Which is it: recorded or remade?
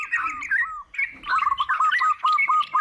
recorded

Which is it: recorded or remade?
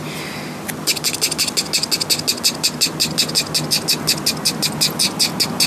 recorded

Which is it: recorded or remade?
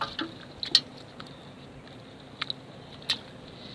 recorded